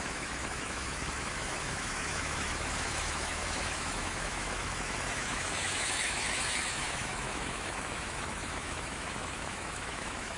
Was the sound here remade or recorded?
remade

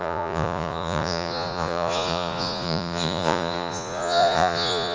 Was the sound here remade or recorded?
remade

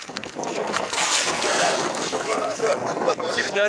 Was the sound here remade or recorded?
remade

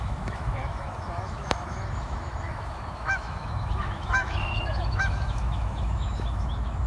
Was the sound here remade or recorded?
remade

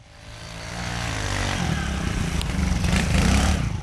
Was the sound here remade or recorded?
remade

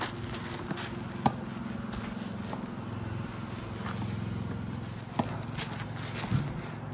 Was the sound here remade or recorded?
recorded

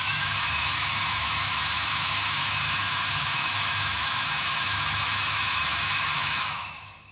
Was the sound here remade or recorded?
remade